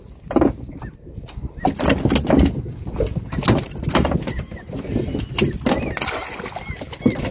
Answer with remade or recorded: recorded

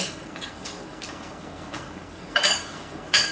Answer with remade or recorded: remade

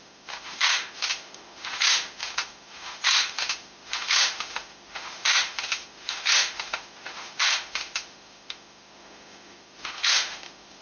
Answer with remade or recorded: remade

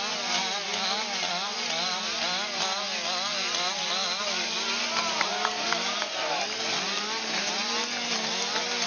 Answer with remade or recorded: recorded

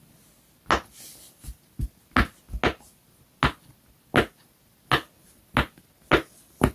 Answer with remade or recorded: recorded